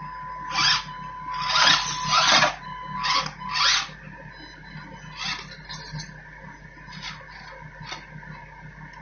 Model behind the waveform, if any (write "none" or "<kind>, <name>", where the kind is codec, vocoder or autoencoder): none